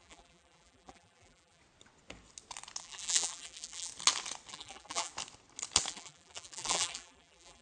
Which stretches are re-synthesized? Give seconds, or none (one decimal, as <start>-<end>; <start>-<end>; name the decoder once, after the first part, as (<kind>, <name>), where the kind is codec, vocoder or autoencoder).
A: 0.0-1.6 (vocoder, BigVGAN v2); 2.8-3.9; 4.5-5.1; 5.9-7.6